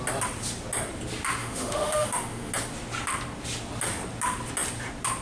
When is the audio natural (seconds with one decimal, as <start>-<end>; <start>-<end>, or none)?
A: 0.0-1.4; 2.5-5.2